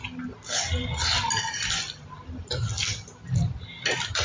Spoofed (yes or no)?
no